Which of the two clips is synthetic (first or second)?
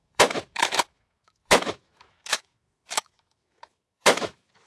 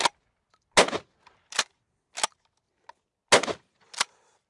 first